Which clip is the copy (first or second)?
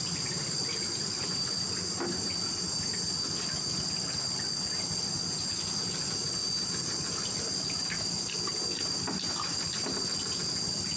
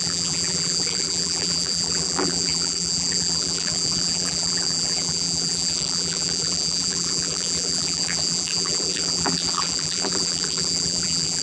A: second